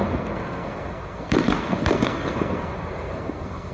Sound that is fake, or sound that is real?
fake